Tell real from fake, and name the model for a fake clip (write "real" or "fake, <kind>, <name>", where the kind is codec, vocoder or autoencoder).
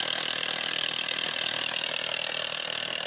real